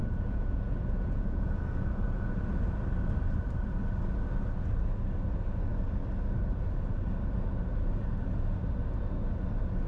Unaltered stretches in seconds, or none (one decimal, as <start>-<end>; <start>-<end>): 2.3-9.9